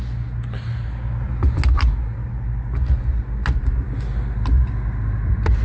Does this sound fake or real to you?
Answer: real